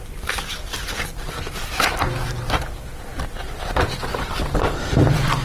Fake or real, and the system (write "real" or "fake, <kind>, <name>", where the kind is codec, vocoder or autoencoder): fake, vocoder, BigVGAN v2